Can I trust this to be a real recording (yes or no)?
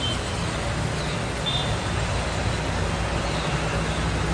yes